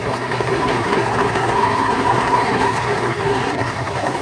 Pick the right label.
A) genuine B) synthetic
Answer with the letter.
B